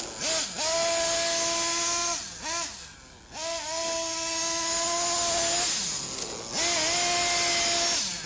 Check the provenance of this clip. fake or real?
real